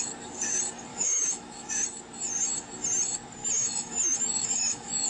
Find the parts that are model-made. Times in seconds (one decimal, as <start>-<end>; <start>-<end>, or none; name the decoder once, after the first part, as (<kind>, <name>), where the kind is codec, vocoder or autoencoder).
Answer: 0.9-1.7 (autoencoder, DAC-VAE); 3.4-5.1